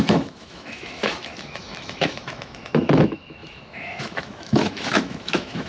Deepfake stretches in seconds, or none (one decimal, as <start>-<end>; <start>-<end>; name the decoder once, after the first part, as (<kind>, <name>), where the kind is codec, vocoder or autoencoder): 0.0-5.7 (autoencoder, DAC-VAE)